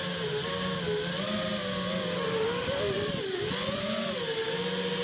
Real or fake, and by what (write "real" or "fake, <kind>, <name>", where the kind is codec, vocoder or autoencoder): real